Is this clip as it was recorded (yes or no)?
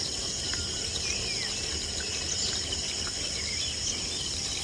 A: yes